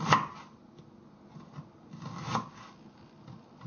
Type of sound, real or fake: real